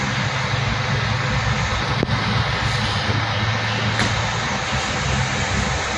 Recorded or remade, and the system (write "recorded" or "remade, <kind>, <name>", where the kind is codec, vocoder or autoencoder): recorded